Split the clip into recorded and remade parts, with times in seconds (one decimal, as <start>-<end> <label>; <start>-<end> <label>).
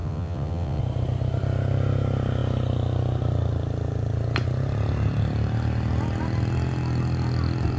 0.0-0.8 remade; 0.8-7.8 recorded